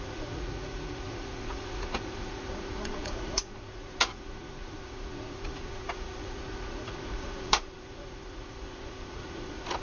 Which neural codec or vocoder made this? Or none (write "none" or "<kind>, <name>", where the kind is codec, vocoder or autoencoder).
vocoder, Vocos